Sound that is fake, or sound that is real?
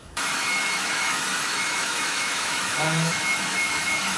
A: fake